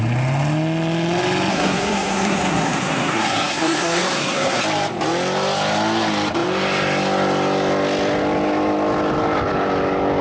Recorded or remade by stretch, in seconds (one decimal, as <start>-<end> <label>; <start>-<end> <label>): 0.0-1.5 recorded; 1.5-4.6 remade; 4.6-10.2 recorded